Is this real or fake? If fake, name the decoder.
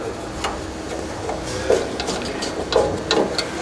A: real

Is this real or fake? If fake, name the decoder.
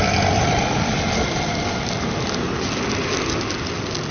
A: real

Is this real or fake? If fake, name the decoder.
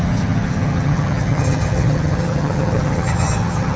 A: fake, vocoder, HiFi-GAN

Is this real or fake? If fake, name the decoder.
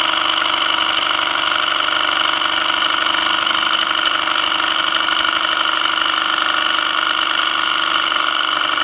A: real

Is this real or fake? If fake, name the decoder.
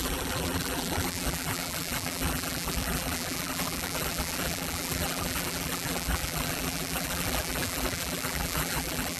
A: fake, vocoder, BigVGAN v2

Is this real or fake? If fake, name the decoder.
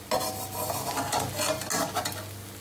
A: real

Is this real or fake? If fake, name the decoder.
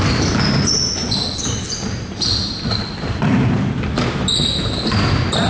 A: real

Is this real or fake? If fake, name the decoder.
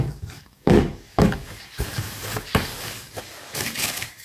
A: fake, codec, DAC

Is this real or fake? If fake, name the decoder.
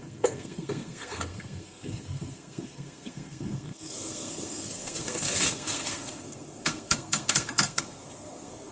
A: fake, codec, SNAC